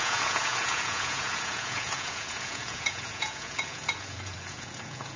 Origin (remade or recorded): remade